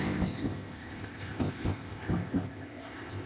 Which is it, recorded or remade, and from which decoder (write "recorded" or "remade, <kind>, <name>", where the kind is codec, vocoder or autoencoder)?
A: remade, codec, ZipCodec